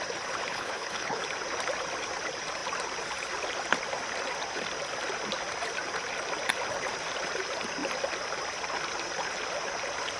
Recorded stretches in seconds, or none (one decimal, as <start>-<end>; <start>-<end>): 0.0-0.5; 1.2-10.2